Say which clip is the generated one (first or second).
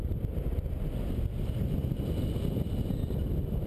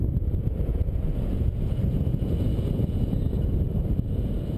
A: second